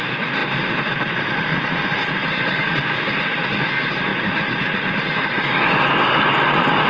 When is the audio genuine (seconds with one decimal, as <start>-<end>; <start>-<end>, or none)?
0.0-0.4; 2.7-4.1; 6.4-6.9